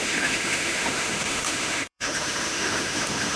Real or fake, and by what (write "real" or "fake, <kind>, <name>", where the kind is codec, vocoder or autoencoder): fake, autoencoder, DAC-VAE